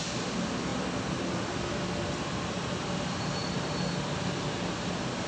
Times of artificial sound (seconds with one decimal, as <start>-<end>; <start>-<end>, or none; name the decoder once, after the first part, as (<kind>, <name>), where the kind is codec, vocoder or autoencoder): none